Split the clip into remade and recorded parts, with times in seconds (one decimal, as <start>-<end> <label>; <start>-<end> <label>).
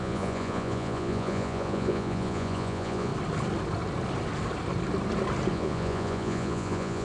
0.0-3.1 remade; 3.1-5.5 recorded; 5.5-7.0 remade